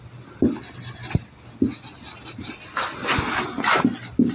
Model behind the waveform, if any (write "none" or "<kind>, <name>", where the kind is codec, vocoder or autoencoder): none